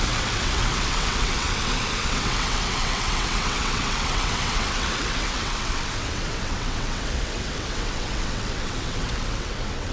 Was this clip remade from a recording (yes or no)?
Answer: yes